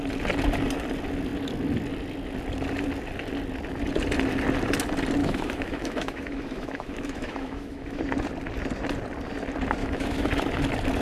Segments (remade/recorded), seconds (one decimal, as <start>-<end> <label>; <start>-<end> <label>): 0.0-5.2 recorded; 5.2-8.0 remade; 8.0-9.8 recorded; 9.8-10.3 remade; 10.3-11.0 recorded